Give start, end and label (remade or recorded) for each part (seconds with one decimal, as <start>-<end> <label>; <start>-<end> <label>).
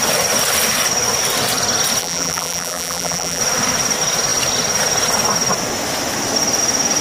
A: 0.0-2.0 recorded; 2.0-3.4 remade; 3.4-7.0 recorded